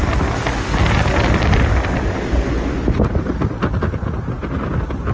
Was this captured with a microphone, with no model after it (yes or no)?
yes